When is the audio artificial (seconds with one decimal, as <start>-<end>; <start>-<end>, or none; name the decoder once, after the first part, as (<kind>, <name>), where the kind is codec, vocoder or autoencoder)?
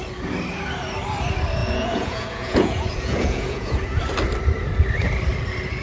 1.6-4.0 (vocoder, Vocos)